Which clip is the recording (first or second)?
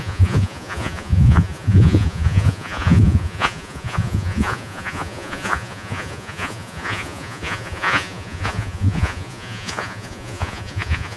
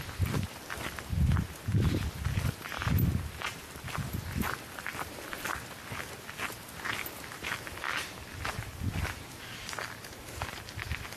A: second